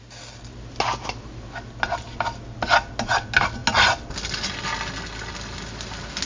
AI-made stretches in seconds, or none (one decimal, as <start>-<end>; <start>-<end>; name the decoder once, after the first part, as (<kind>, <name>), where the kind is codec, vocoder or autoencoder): none

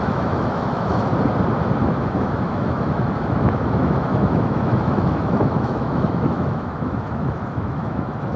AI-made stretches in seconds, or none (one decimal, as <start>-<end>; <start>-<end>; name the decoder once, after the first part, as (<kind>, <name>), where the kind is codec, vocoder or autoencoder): 0.0-1.1 (autoencoder, DAC-VAE); 2.0-8.4

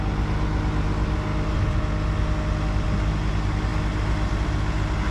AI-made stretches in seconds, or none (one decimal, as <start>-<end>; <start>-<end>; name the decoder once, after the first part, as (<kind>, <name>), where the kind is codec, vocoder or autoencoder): none

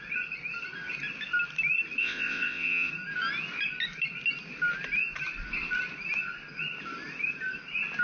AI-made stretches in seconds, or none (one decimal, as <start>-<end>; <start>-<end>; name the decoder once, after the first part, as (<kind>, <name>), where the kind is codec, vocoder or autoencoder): 2.0-2.9 (vocoder, WaveNeXt)

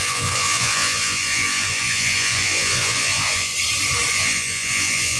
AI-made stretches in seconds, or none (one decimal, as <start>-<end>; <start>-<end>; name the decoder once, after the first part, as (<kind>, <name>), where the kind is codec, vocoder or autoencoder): 0.0-3.5 (vocoder, Vocos); 4.1-5.2

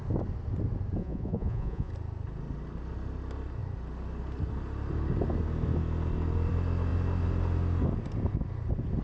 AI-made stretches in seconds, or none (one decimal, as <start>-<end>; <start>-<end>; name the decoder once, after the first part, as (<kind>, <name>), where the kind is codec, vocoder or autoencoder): 1.0-1.9 (vocoder, Vocos)

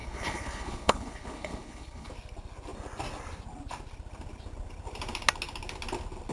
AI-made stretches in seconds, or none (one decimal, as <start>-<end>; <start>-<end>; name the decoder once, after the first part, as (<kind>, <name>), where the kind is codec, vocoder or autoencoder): 0.0-2.1 (codec, HILCodec)